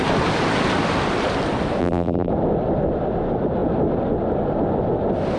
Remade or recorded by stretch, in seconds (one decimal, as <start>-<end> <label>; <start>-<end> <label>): 0.0-1.8 recorded; 1.8-2.3 remade; 2.3-5.4 recorded